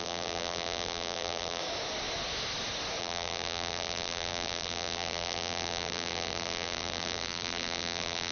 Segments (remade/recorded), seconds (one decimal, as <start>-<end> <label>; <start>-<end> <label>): 0.0-1.6 remade; 1.6-3.0 recorded; 3.0-8.3 remade